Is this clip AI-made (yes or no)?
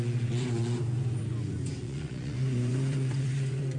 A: yes